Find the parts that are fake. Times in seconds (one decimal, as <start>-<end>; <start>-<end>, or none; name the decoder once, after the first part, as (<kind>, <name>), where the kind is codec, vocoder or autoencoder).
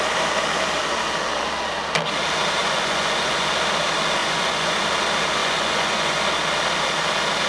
2.6-3.5 (vocoder, Vocos); 4.2-4.8; 5.4-6.2